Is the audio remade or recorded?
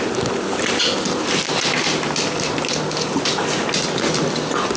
recorded